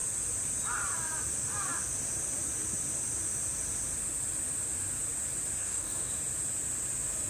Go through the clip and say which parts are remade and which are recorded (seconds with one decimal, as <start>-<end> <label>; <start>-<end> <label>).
0.0-5.6 recorded; 5.6-6.1 remade; 6.1-7.3 recorded